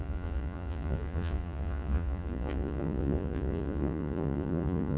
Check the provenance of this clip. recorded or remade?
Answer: remade